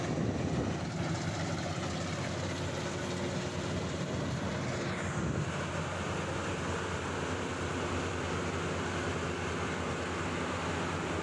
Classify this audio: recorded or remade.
recorded